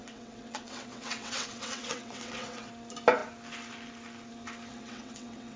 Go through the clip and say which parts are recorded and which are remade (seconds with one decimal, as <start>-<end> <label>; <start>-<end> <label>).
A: 0.0-2.7 remade; 2.7-4.7 recorded; 4.7-5.6 remade